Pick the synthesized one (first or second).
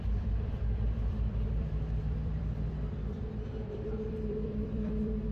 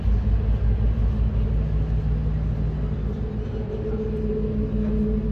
first